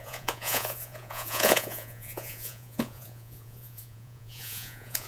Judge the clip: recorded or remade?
remade